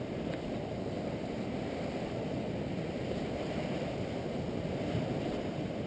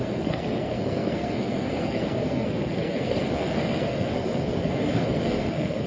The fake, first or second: second